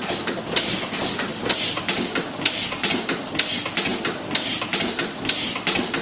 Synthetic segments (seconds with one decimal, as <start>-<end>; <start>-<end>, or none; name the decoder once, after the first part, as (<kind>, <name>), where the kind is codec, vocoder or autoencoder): none

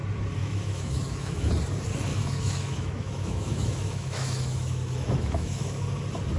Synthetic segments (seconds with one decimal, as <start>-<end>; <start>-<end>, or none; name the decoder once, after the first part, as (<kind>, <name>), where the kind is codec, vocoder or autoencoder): 0.4-1.5 (autoencoder, DAC-VAE); 2.1-5.9